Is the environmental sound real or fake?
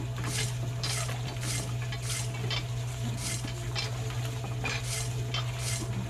real